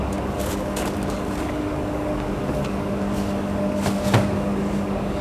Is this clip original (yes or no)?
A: no